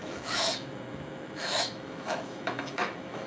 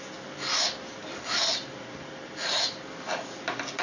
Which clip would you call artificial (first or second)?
first